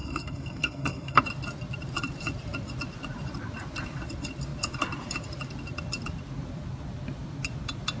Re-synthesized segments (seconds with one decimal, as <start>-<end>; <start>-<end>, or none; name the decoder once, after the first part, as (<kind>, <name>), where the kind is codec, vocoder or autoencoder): 0.0-1.2 (codec, SNAC)